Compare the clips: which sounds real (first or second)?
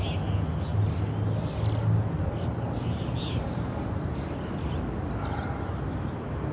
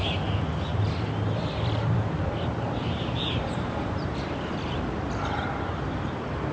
first